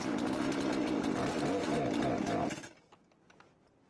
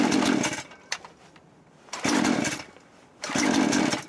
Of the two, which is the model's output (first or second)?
second